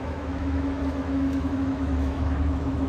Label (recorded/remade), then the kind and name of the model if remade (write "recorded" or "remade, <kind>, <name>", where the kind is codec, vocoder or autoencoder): remade, autoencoder, DAC-VAE